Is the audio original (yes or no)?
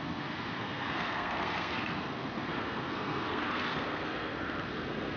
no